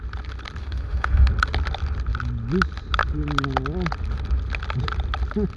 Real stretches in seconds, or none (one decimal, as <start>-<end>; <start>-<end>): 0.0-0.6; 1.3-5.6